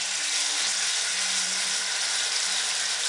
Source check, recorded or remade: recorded